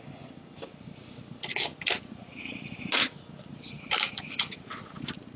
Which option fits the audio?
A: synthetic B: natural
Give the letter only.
B